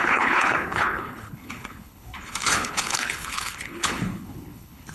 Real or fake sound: fake